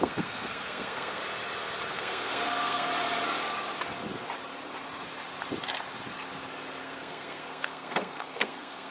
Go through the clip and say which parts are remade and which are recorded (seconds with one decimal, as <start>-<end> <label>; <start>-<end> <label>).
0.0-1.2 remade; 1.2-1.9 recorded; 1.9-2.9 remade; 2.9-6.8 recorded; 6.8-8.9 remade

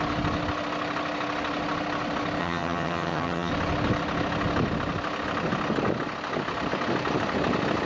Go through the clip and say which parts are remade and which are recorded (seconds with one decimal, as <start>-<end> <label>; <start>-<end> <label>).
0.0-2.4 recorded; 2.4-3.5 remade; 3.5-7.9 recorded

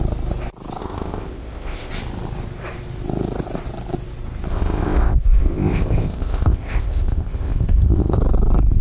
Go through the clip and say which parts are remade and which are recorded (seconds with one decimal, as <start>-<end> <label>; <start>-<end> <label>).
0.0-0.8 recorded; 0.8-1.9 remade; 1.9-4.5 recorded; 4.5-8.2 remade; 8.2-8.8 recorded

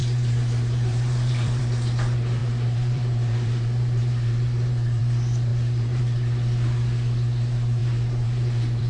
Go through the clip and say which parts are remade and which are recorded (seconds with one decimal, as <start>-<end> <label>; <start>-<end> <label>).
0.0-1.6 remade; 1.6-2.4 recorded; 2.4-5.0 remade; 5.0-5.5 recorded; 5.5-6.0 remade; 6.0-7.8 recorded; 7.8-8.9 remade

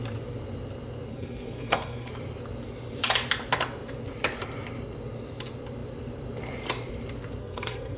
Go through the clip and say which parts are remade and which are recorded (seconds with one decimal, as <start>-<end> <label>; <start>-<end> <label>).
0.0-1.1 recorded; 1.1-2.1 remade; 2.1-7.4 recorded; 7.4-8.0 remade

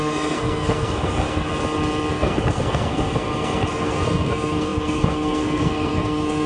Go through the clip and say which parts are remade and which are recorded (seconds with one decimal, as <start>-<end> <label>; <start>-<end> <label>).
0.0-1.5 remade; 1.5-2.1 recorded; 2.1-6.5 remade